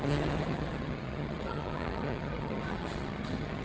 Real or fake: fake